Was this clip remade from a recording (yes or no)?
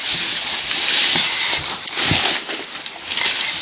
yes